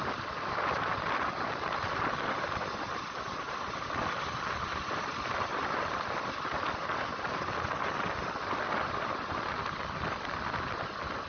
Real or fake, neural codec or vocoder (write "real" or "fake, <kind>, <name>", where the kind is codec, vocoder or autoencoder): real